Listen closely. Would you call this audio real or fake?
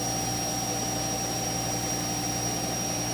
real